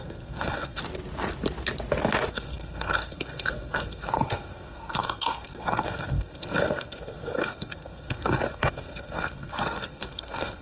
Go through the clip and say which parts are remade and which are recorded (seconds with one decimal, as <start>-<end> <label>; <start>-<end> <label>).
0.0-0.8 remade; 0.8-2.3 recorded; 2.3-10.6 remade